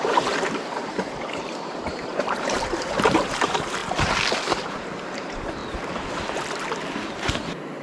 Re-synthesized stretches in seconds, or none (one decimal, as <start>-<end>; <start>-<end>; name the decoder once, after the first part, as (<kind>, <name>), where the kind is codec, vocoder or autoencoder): 0.0-3.8 (vocoder, BigVGAN v2); 4.5-5.6; 7.2-7.8